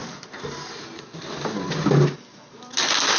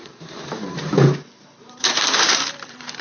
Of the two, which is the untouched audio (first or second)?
first